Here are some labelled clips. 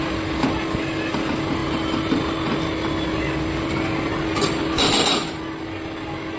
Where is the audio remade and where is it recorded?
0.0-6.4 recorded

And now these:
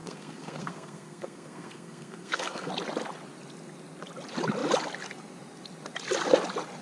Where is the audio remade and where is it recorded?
0.0-2.7 remade; 2.7-6.8 recorded

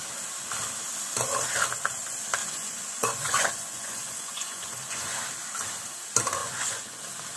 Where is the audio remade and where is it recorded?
0.0-2.4 recorded; 2.4-5.3 remade; 5.3-6.4 recorded; 6.4-7.0 remade; 7.0-7.4 recorded